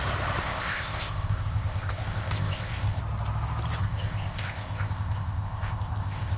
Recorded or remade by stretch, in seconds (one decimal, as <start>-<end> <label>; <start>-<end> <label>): 0.0-0.4 recorded; 0.4-3.0 remade; 3.0-3.8 recorded; 3.8-6.4 remade